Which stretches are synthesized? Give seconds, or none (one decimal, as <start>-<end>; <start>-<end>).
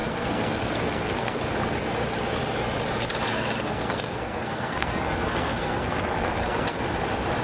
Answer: 0.0-1.4; 3.3-6.8